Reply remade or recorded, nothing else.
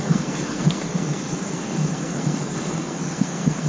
remade